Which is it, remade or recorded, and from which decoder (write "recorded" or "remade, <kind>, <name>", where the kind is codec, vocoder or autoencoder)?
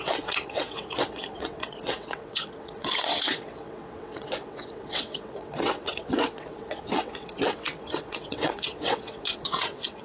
remade, vocoder, WaveNeXt